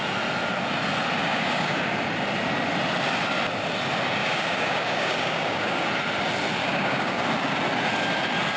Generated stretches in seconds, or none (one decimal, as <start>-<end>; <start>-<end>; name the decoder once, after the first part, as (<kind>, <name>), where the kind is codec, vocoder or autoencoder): 1.2-1.8 (codec, DAC); 4.2-5.9; 6.6-7.2